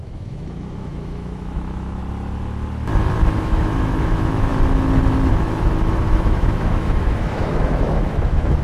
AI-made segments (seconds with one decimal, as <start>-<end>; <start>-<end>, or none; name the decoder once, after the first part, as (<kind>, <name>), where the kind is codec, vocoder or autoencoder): 0.0-2.0 (autoencoder, DAC-VAE); 3.4-4.5; 5.3-8.6